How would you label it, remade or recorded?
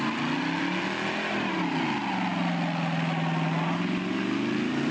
recorded